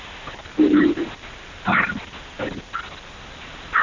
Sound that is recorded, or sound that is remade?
recorded